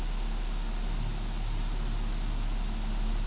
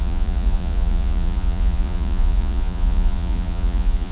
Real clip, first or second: first